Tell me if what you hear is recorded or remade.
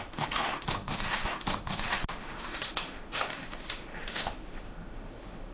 remade